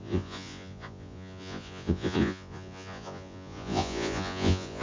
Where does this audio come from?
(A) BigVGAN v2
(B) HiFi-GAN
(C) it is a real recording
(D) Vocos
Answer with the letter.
D